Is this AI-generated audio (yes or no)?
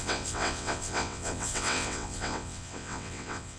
yes